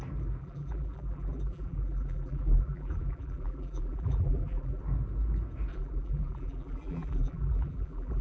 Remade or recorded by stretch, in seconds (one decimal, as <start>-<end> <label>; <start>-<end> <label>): 0.0-0.4 recorded; 0.4-4.8 remade; 4.8-5.7 recorded; 5.7-8.2 remade